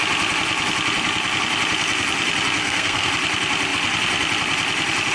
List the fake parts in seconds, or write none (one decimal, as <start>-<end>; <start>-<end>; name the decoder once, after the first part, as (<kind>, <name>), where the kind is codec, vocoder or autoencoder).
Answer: 2.6-3.1 (codec, SNAC)